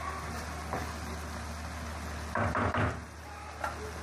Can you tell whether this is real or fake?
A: real